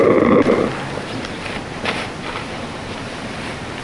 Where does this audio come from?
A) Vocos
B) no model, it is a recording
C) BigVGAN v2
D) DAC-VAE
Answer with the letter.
B